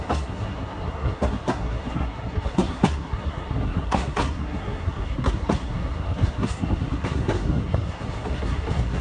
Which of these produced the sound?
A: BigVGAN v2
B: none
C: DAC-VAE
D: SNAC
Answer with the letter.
D